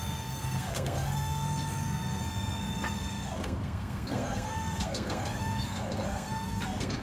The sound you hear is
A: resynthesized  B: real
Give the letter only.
A